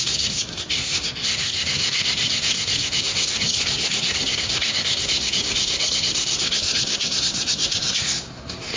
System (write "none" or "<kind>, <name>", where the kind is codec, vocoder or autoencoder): codec, SNAC